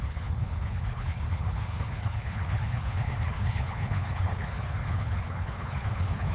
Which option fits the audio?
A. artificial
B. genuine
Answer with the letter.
A